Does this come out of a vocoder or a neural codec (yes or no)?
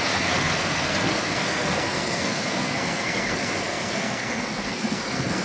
yes